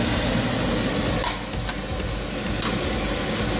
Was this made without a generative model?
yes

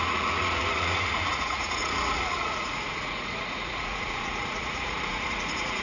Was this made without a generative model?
no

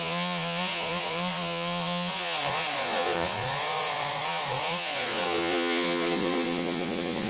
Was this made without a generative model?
no